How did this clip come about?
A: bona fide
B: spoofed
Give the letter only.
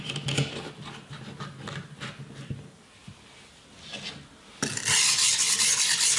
A